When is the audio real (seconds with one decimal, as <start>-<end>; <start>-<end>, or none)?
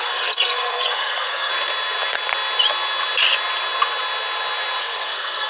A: 1.5-4.8